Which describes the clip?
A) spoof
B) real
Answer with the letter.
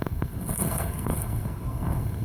A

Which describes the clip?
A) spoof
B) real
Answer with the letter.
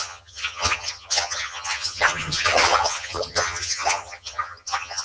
A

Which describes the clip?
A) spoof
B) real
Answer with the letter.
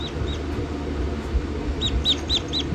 B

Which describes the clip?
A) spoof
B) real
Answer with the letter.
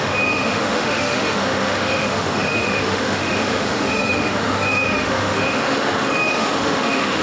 A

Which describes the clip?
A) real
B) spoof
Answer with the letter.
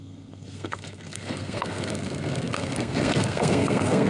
B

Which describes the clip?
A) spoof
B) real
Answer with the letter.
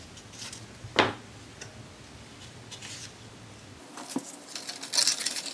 B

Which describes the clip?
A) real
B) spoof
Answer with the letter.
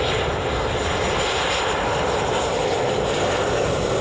A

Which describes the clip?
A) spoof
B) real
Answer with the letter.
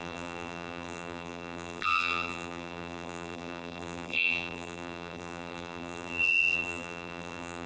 A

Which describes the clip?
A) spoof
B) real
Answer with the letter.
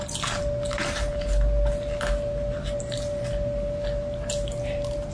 B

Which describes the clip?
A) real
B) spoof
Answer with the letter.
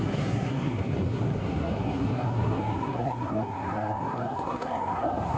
B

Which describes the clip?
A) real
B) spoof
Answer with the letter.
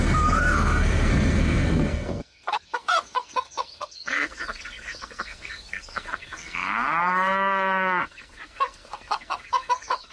B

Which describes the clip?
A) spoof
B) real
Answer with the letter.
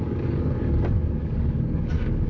A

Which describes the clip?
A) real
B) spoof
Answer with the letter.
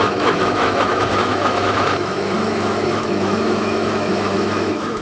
B